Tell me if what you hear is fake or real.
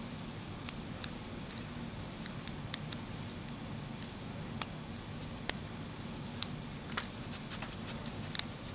real